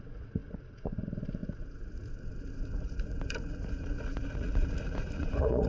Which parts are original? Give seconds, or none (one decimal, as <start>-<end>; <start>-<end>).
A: none